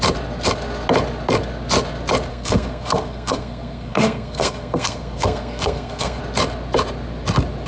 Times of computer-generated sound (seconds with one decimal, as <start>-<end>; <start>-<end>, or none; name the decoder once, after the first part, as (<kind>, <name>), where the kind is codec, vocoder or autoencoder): 2.3-6.2 (codec, SNAC)